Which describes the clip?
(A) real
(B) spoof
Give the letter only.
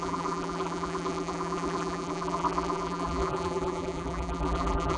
B